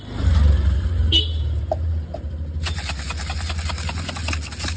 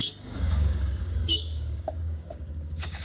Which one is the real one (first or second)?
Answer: first